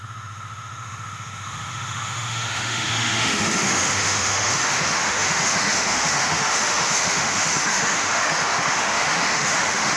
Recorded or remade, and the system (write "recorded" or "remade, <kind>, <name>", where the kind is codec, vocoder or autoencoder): remade, autoencoder, DAC-VAE